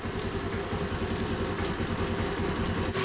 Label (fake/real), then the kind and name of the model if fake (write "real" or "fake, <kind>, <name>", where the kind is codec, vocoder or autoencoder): real